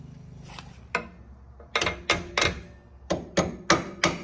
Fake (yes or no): no